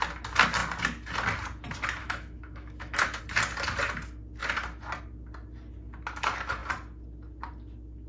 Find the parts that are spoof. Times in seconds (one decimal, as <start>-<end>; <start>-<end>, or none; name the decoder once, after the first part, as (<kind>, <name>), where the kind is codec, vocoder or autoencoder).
2.0-3.2 (autoencoder, DAC-VAE)